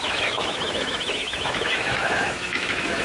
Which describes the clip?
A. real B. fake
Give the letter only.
B